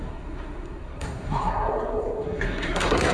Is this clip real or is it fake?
fake